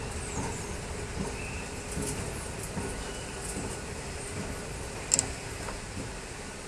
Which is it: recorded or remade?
recorded